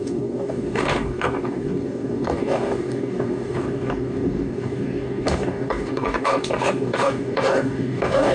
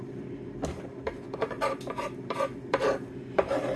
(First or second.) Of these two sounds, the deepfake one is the first